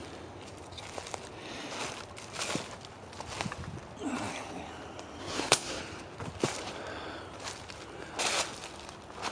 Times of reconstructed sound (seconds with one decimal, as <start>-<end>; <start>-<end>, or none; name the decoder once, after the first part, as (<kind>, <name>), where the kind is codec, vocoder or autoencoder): 5.2-5.8 (codec, SNAC)